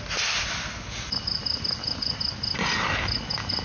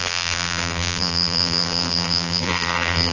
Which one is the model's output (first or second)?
second